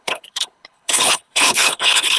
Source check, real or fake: fake